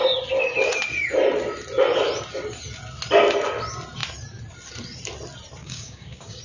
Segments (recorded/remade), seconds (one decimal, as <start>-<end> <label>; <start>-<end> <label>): 0.0-5.6 recorded; 5.6-6.4 remade